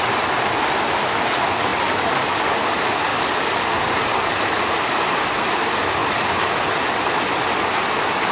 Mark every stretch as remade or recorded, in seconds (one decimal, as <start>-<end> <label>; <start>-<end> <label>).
0.0-1.7 recorded; 1.7-2.3 remade; 2.3-3.1 recorded; 3.1-5.5 remade; 5.5-6.0 recorded; 6.0-7.2 remade; 7.2-8.3 recorded